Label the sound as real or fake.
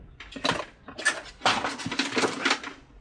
real